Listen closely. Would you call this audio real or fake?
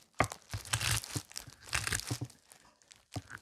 real